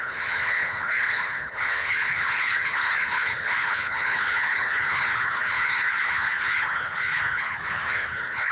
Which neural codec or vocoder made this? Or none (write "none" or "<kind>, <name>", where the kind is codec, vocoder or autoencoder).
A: codec, HILCodec